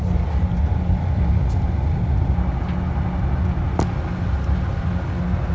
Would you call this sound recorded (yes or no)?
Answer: yes